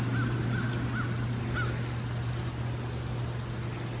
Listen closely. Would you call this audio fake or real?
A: real